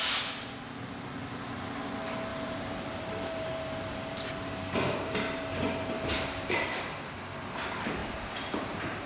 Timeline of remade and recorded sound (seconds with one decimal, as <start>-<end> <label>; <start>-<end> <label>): 0.0-2.3 recorded; 2.3-7.1 remade; 7.1-8.0 recorded; 8.0-9.1 remade